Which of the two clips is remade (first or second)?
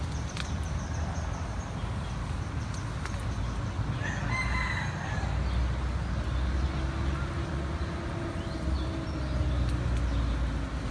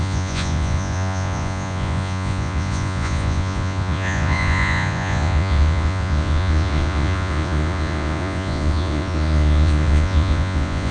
second